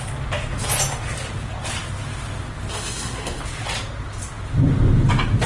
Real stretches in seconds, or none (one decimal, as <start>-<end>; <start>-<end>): 0.0-2.7; 3.4-5.5